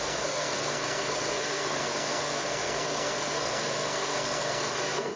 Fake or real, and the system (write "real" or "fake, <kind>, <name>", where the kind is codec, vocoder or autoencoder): fake, codec, SNAC